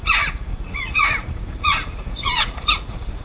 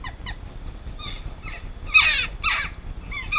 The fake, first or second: first